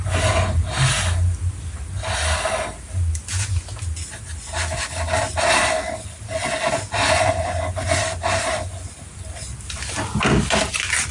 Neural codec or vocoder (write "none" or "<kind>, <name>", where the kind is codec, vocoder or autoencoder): none